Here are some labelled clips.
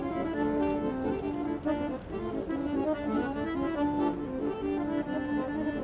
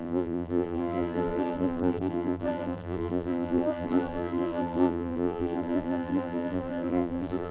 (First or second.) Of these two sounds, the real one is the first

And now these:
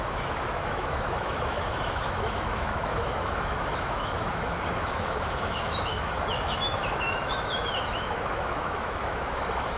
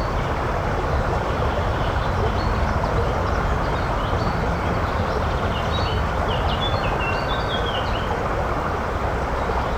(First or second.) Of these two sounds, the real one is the second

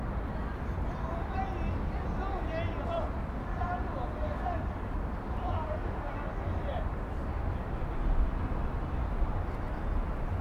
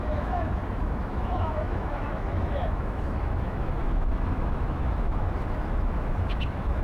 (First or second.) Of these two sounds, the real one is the first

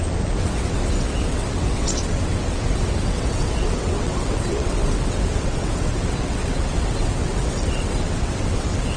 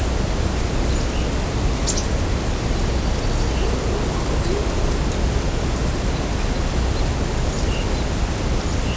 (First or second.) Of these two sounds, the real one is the second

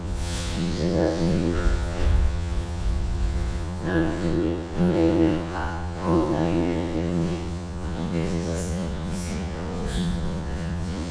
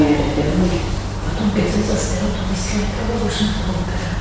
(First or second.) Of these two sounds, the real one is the second